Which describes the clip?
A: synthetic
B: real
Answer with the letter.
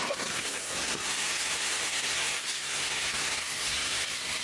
A